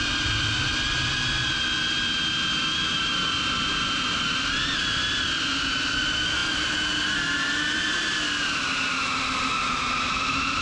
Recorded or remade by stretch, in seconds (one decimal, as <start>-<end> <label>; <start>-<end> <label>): 0.0-10.6 recorded